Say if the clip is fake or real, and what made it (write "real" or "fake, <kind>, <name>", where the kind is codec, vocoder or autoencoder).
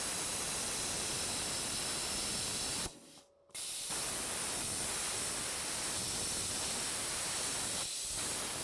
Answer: real